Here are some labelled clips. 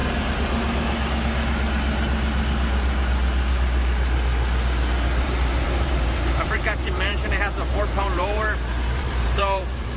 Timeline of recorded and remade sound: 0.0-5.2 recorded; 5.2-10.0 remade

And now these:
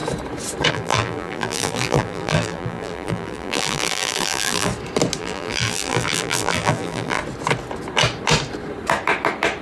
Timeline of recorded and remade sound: 0.0-0.7 recorded; 0.7-4.7 remade; 4.7-5.2 recorded; 5.2-7.2 remade; 7.2-9.6 recorded